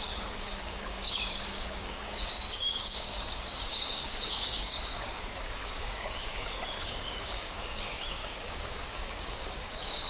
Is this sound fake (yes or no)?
yes